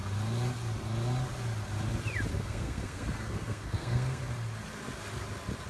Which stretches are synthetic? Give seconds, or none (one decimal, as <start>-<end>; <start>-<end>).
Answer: 2.3-4.2